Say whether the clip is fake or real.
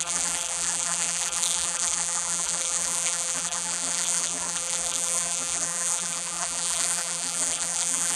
fake